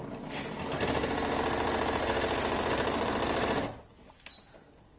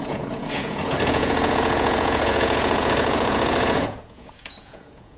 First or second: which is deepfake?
second